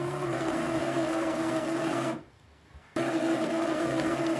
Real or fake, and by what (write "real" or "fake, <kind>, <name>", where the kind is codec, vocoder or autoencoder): fake, codec, SNAC